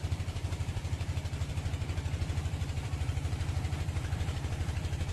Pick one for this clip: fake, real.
fake